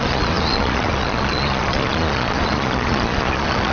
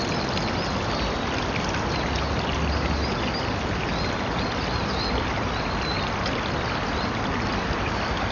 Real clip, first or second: second